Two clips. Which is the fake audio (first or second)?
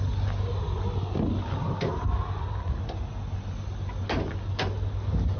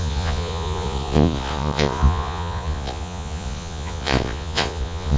second